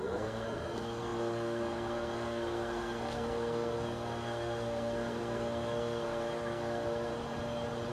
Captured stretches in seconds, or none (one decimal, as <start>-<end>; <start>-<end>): 7.1-7.9

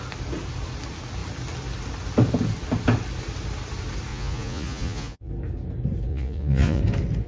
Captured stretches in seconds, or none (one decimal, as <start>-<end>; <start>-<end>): 0.0-4.1; 5.3-6.1; 6.8-7.3

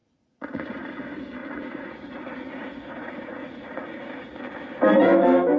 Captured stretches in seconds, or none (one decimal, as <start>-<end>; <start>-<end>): 1.0-1.4; 4.4-5.6

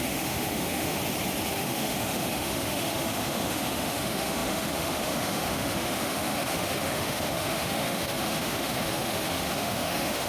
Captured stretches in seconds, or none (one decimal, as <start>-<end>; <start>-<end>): 1.0-1.5

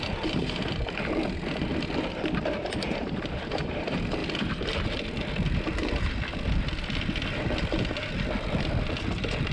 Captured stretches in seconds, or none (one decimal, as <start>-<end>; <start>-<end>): none

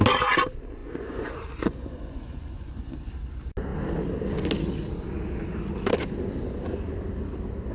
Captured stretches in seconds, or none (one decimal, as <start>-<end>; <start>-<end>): 0.0-0.8; 3.1-7.7